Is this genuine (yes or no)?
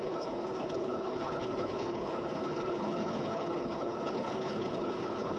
no